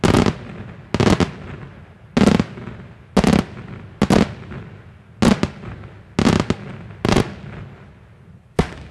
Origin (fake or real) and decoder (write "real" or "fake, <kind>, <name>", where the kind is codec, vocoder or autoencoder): real